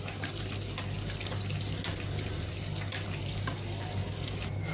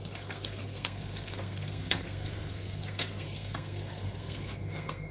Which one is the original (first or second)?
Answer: first